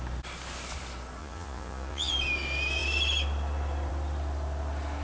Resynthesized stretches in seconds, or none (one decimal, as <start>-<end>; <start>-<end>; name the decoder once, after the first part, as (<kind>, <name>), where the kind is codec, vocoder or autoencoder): 1.2-2.1 (vocoder, Vocos)